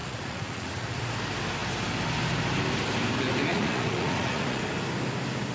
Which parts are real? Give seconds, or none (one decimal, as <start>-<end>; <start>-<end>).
1.0-3.5; 4.6-5.5